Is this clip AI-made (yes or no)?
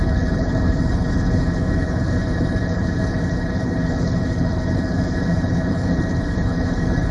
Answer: yes